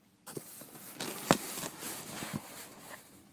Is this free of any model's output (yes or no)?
yes